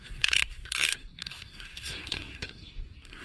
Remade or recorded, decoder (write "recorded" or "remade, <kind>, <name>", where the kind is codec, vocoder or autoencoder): remade, codec, SNAC